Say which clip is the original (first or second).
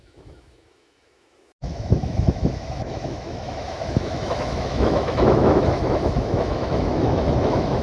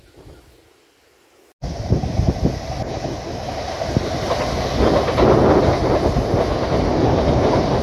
second